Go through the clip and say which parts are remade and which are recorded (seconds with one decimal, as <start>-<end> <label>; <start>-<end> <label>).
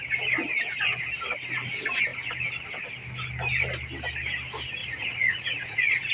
0.0-4.8 recorded; 4.8-6.1 remade